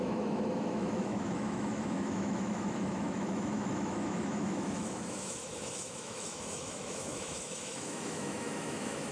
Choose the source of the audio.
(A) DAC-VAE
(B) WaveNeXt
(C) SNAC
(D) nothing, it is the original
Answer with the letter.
A